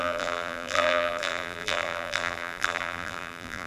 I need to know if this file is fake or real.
fake